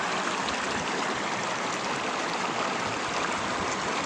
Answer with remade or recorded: recorded